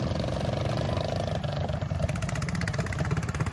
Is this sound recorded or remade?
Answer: recorded